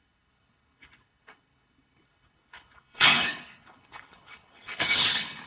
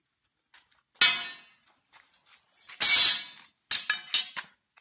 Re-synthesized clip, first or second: first